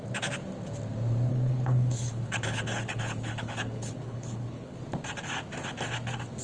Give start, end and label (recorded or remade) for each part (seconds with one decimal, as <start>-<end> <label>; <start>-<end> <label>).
0.0-1.3 recorded; 1.3-4.8 remade; 4.8-6.4 recorded